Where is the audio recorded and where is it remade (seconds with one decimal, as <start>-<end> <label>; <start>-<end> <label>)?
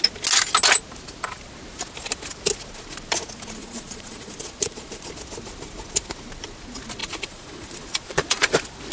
0.0-3.6 recorded; 3.6-5.1 remade; 5.1-7.0 recorded; 7.0-8.5 remade; 8.5-8.9 recorded